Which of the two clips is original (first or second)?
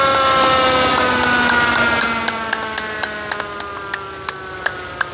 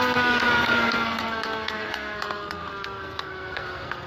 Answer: first